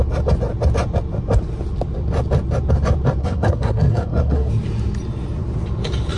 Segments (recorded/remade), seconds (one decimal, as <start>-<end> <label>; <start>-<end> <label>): 0.0-3.2 recorded; 3.2-4.5 remade; 4.5-6.2 recorded